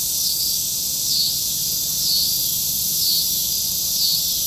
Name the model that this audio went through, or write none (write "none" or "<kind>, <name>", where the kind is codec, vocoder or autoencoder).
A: vocoder, BigVGAN v2